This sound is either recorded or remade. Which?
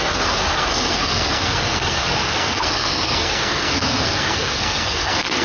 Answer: remade